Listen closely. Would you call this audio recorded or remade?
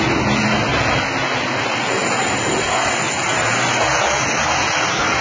recorded